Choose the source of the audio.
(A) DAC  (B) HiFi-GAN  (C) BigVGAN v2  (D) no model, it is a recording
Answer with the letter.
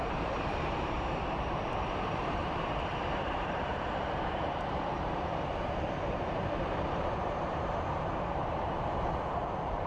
C